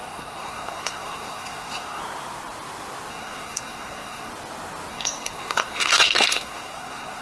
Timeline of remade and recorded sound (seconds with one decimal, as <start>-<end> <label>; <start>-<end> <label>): 0.0-2.0 remade; 2.0-3.1 recorded; 3.1-4.3 remade; 4.3-4.9 recorded; 4.9-7.2 remade